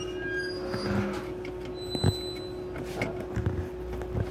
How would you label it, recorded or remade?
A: recorded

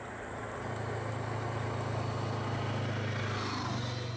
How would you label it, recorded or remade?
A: recorded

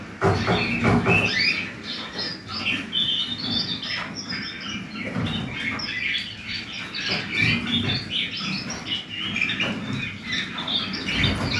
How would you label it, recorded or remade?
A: recorded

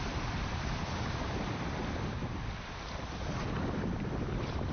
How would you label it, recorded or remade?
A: remade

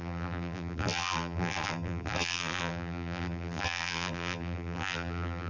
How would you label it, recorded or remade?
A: remade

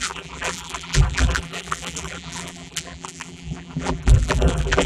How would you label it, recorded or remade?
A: remade